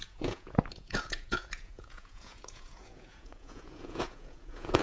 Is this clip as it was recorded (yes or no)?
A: no